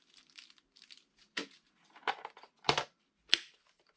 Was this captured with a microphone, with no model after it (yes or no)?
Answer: no